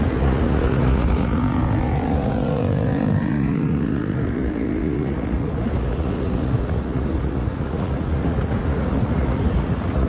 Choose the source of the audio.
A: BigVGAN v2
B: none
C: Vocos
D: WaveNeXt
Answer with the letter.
C